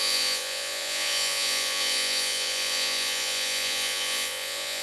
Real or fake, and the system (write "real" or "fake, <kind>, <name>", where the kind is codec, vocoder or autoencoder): fake, vocoder, Vocos